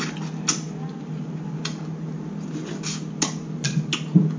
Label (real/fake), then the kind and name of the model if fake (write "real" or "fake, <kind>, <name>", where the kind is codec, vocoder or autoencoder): real